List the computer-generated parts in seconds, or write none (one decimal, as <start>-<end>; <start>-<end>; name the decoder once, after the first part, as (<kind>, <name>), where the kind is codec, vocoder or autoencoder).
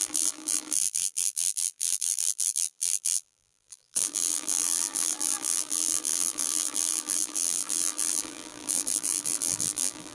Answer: 0.0-10.1 (vocoder, BigVGAN v2)